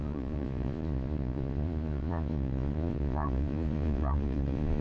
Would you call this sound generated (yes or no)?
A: yes